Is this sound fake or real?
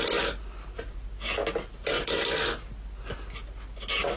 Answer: real